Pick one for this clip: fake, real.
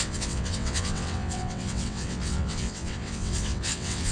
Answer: fake